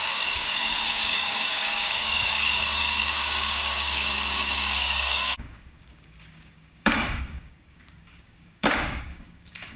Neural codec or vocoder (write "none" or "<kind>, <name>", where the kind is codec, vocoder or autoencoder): codec, DAC